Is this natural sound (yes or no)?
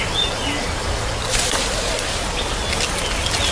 yes